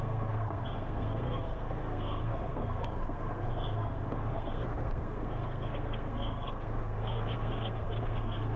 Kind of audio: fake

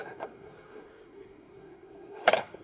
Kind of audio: fake